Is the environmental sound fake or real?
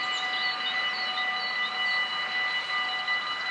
real